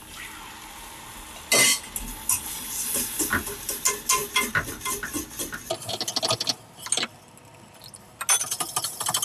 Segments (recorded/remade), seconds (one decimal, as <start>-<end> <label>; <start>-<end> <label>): 0.0-9.2 recorded